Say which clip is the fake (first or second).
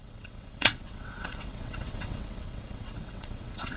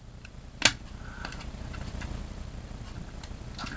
first